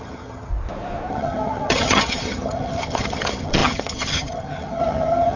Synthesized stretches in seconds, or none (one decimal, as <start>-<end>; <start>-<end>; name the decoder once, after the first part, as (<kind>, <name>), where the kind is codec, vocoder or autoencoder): 0.0-0.5 (vocoder, HiFi-GAN); 1.1-5.4